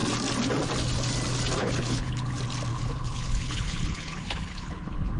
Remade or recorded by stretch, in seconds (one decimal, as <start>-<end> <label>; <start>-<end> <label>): 0.0-1.6 recorded; 1.6-2.3 remade; 2.3-2.7 recorded; 2.7-5.2 remade